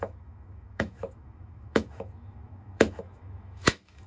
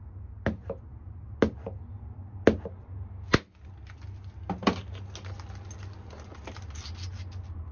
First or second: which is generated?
first